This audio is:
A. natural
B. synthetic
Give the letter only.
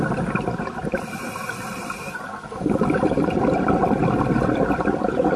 A